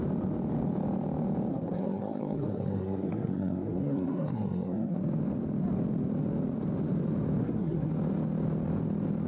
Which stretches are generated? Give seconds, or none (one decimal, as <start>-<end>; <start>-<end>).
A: 1.5-5.0; 7.4-7.9

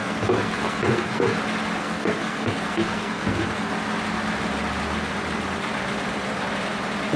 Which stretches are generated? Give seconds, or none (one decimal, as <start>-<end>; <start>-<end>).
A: 0.0-1.4; 1.8-3.7

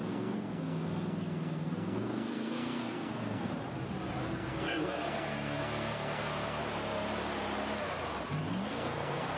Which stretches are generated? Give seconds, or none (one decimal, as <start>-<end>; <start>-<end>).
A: 0.0-3.5; 4.2-6.6; 8.7-9.4